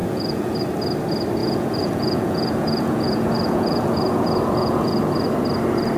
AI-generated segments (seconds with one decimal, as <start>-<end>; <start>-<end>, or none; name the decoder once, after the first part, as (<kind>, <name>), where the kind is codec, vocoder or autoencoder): 0.0-0.6 (vocoder, Vocos); 1.4-5.0